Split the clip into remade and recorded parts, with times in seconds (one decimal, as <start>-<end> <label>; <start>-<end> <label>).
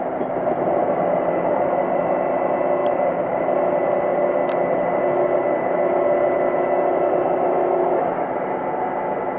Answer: 0.0-2.8 recorded; 2.8-3.7 remade; 3.7-9.4 recorded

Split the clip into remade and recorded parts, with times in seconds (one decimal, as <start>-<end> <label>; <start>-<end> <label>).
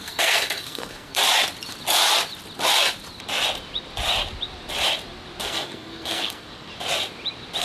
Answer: 0.0-1.2 remade; 1.2-5.4 recorded; 5.4-6.7 remade; 6.7-7.6 recorded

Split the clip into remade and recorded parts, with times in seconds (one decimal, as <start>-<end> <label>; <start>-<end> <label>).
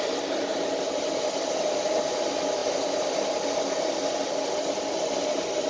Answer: 0.0-5.7 recorded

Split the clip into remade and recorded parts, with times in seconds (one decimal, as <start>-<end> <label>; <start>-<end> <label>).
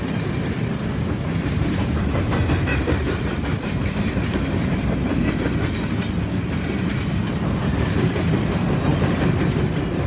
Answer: 0.0-2.7 recorded; 2.7-5.4 remade; 5.4-7.6 recorded; 7.6-8.3 remade; 8.3-8.9 recorded; 8.9-9.6 remade; 9.6-10.1 recorded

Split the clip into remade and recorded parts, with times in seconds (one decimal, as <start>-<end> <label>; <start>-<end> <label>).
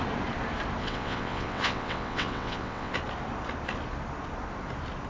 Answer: 0.0-0.8 recorded; 0.8-2.9 remade; 2.9-5.1 recorded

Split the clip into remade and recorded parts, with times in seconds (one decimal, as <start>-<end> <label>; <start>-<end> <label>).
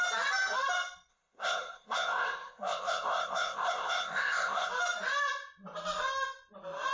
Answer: 0.0-1.1 recorded; 1.1-4.7 remade; 4.7-6.9 recorded